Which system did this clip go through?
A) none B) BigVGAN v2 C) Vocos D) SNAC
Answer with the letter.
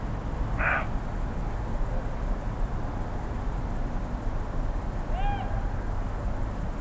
A